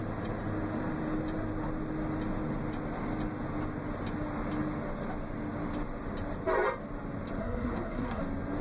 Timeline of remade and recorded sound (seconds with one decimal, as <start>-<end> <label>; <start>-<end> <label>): 0.0-7.4 recorded; 7.4-8.2 remade; 8.2-8.6 recorded

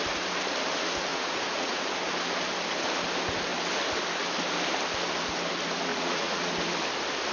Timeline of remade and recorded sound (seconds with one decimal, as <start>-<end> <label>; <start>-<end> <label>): 0.0-1.1 recorded; 1.1-1.8 remade; 1.8-5.9 recorded; 5.9-6.5 remade; 6.5-7.3 recorded

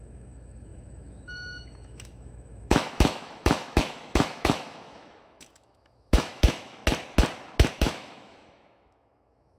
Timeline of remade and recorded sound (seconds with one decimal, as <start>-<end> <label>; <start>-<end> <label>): 0.0-6.8 remade; 6.8-7.7 recorded; 7.7-9.6 remade

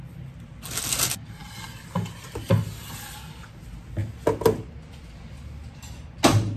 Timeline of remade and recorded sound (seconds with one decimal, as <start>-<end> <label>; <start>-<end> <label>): 0.0-6.6 recorded

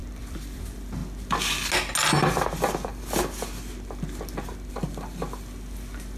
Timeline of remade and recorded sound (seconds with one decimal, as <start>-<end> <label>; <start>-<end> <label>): 0.0-0.6 remade; 0.6-6.2 recorded

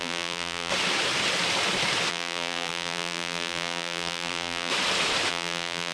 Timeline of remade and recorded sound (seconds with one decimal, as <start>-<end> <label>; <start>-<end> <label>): 0.0-0.7 remade; 0.7-2.1 recorded; 2.1-4.7 remade; 4.7-5.3 recorded; 5.3-5.9 remade

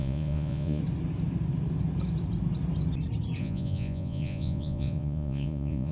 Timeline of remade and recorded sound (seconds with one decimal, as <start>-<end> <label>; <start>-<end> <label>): 0.0-0.8 remade; 0.8-3.4 recorded; 3.4-5.9 remade